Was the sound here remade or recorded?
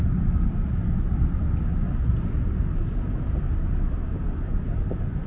recorded